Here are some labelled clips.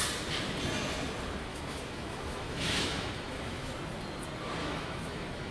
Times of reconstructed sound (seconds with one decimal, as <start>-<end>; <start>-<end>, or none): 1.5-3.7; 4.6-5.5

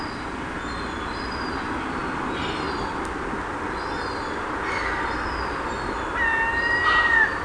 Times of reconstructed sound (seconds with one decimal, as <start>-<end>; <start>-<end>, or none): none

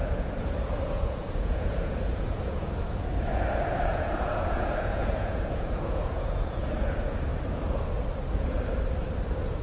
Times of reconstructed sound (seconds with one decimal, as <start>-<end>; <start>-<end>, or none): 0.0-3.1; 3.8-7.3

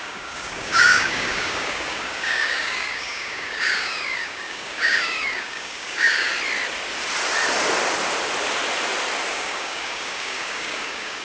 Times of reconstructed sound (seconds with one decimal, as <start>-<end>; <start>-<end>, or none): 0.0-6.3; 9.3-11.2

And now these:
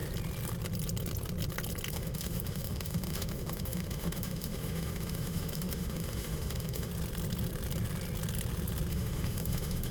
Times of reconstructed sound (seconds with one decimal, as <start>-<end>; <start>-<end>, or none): 1.9-6.9; 8.9-9.9